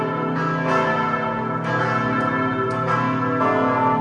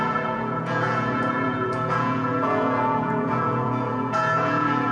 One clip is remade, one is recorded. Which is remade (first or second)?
second